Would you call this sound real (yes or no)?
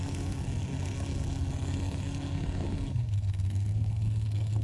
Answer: no